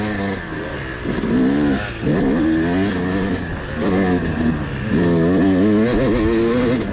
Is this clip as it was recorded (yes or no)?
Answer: yes